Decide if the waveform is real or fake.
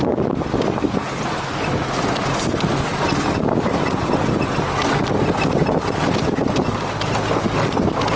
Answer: real